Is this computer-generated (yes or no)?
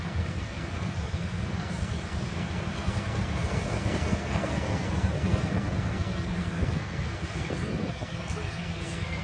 yes